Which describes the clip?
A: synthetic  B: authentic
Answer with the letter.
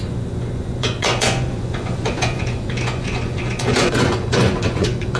A